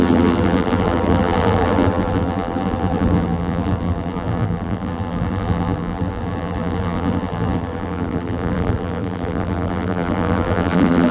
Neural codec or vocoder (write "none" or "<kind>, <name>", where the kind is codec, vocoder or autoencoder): vocoder, BigVGAN v2